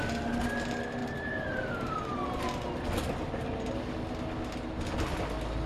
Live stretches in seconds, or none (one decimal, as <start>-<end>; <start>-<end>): 0.0-1.0; 2.4-5.7